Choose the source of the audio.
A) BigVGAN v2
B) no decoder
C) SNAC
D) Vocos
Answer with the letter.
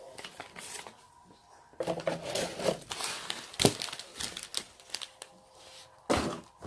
B